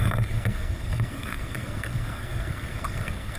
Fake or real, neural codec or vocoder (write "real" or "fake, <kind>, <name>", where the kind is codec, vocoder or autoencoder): fake, codec, SNAC